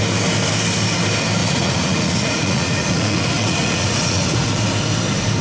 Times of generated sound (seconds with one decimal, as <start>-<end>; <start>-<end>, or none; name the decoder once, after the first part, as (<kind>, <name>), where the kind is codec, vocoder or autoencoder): 1.4-4.6 (vocoder, Vocos)